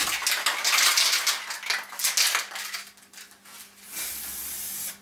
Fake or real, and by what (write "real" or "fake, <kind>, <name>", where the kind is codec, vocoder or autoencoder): real